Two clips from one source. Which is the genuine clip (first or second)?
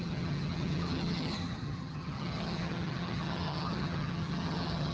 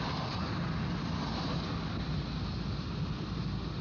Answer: second